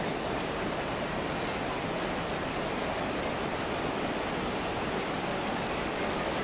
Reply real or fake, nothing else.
real